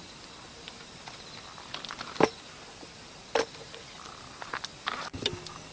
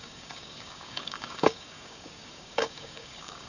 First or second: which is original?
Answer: first